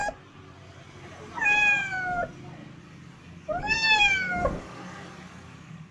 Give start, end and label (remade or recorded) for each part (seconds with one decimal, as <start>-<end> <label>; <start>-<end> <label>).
0.0-2.8 recorded; 2.8-5.9 remade